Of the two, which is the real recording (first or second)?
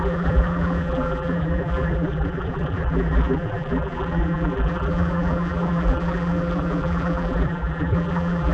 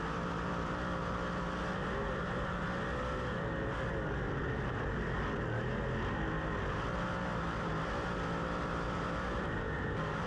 second